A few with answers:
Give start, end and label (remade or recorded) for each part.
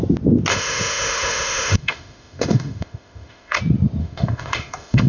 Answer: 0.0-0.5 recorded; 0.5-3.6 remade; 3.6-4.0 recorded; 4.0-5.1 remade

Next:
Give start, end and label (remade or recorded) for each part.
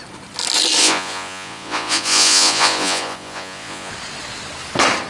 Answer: 0.0-0.8 recorded; 0.8-3.9 remade; 3.9-5.1 recorded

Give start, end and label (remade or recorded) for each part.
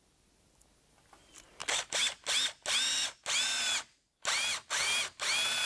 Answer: 0.0-5.7 recorded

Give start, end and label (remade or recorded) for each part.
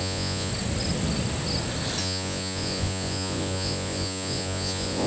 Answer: 0.0-0.5 remade; 0.5-2.0 recorded; 2.0-5.1 remade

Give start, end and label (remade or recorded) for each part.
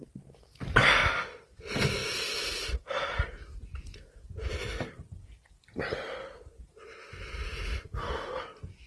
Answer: 0.0-8.9 recorded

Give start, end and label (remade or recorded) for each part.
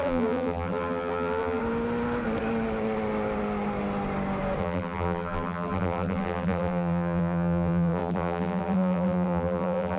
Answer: 0.0-1.6 remade; 1.6-4.6 recorded; 4.6-10.0 remade